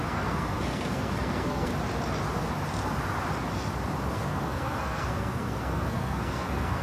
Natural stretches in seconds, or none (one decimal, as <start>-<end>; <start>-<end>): 1.7-4.1